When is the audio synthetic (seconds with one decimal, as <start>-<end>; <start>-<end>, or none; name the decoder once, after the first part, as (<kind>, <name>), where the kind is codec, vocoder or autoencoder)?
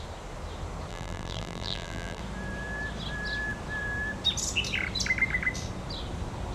0.9-2.2 (vocoder, BigVGAN v2)